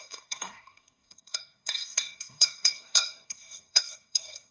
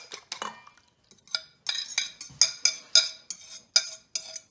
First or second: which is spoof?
first